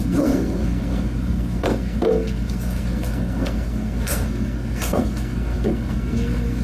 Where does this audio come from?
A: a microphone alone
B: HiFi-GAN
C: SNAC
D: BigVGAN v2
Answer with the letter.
C